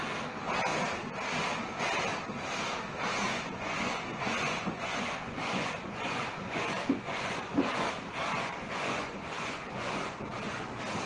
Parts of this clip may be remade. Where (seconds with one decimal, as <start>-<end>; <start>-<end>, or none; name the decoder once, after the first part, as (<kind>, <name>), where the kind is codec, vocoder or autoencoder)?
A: 3.2-7.9 (vocoder, Vocos); 8.3-10.7